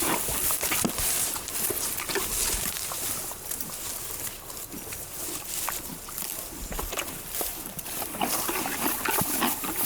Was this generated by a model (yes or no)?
no